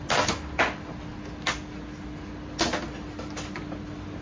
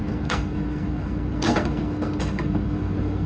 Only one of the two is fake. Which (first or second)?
second